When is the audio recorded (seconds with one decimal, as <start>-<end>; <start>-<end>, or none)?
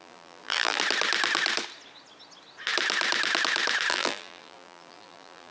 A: 0.8-3.9